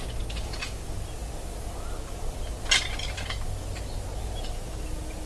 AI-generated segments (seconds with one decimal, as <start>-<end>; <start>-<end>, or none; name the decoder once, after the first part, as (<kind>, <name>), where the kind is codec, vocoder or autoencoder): none